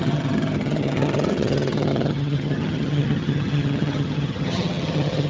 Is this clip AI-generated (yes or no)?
yes